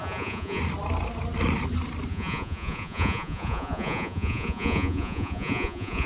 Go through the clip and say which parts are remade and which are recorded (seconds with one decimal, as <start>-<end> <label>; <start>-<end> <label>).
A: 0.0-0.6 remade; 0.6-2.1 recorded; 2.1-6.1 remade